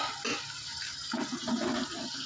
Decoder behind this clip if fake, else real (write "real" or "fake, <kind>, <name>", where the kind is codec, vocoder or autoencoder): real